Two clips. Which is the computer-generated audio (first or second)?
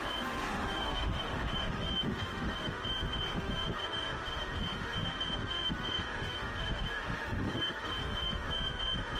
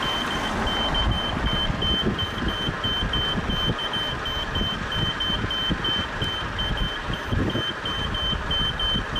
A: first